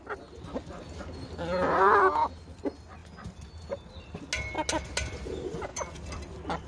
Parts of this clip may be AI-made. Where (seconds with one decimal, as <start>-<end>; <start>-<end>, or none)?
5.7-6.3